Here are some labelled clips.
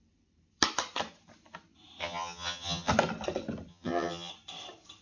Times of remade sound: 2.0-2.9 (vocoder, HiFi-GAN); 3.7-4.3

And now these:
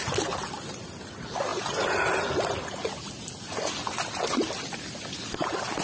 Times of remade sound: none

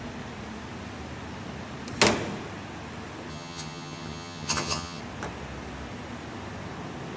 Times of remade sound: 3.3-5.0 (vocoder, HiFi-GAN)

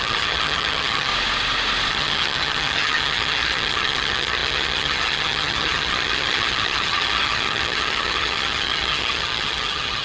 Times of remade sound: 0.0-1.1 (vocoder, HiFi-GAN); 1.9-10.0

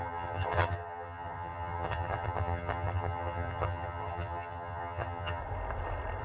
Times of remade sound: 0.0-5.4 (vocoder, HiFi-GAN)